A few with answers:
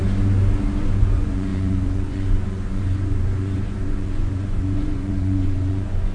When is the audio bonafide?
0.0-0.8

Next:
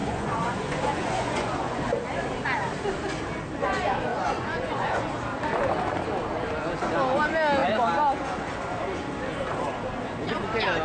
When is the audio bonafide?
1.8-4.1; 5.1-10.8

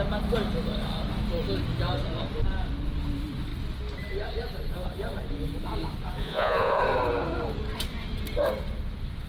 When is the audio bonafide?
0.0-6.2; 6.8-9.3

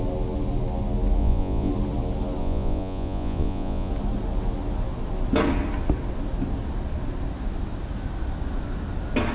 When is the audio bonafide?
0.0-1.2; 1.7-2.4; 3.9-9.3

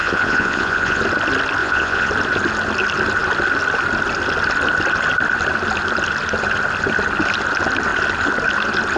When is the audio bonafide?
1.0-1.6; 2.1-9.0

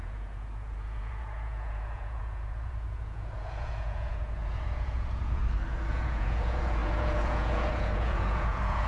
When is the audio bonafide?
5.4-5.9

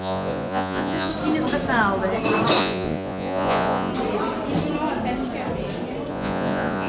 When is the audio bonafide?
1.1-2.6; 3.9-6.1

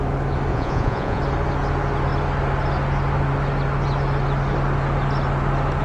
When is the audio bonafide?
0.0-0.5; 1.2-5.8